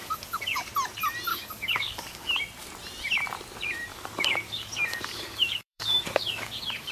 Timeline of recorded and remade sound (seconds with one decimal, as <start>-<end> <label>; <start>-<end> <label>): 0.0-0.7 remade; 0.7-1.3 recorded; 1.3-2.4 remade; 2.4-3.9 recorded; 3.9-6.9 remade